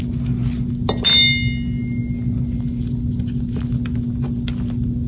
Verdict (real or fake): real